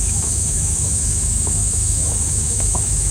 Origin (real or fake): fake